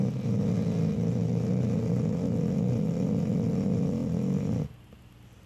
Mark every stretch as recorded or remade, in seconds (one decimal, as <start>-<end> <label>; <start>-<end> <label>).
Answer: 0.0-5.5 recorded